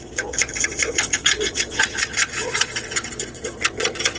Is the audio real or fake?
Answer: fake